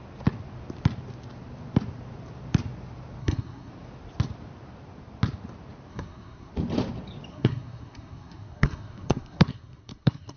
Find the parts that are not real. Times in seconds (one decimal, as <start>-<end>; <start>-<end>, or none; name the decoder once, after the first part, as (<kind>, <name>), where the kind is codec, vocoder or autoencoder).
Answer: 3.2-3.7 (codec, SNAC); 5.9-6.5; 7.3-10.4